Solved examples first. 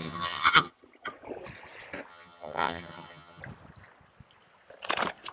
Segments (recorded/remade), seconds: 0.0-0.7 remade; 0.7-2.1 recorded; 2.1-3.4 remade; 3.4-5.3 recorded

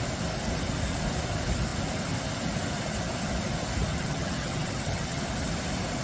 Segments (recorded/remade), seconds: 0.0-3.9 recorded; 3.9-5.2 remade; 5.2-6.0 recorded

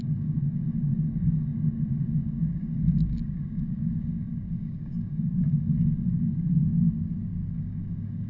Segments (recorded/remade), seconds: 0.0-6.6 remade; 6.6-7.5 recorded; 7.5-8.3 remade

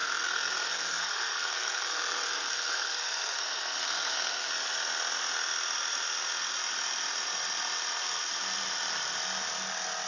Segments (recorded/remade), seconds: 0.0-4.5 remade; 4.5-10.1 recorded

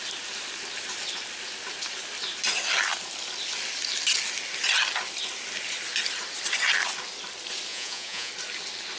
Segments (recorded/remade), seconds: 0.0-7.7 recorded; 7.7-8.3 remade; 8.3-9.0 recorded

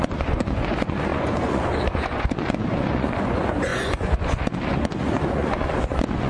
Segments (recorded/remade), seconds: 0.0-6.3 remade

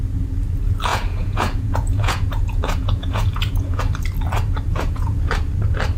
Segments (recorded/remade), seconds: 0.0-0.9 recorded; 0.9-3.8 remade; 3.8-4.7 recorded; 4.7-5.3 remade; 5.3-6.0 recorded